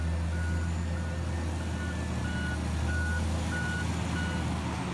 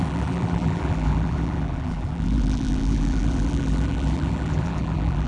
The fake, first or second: second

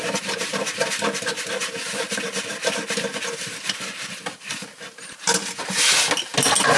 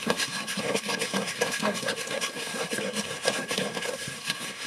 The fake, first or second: second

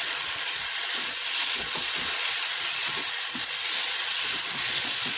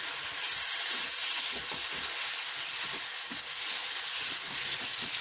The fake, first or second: first